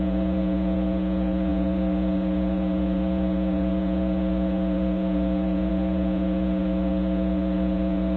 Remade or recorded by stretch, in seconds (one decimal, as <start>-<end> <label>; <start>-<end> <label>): 0.0-8.2 remade